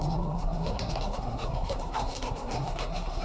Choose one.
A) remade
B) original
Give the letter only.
A